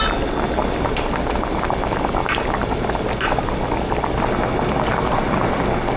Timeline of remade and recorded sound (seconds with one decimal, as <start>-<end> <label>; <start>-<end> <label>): 0.0-6.0 recorded